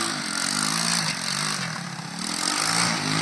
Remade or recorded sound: recorded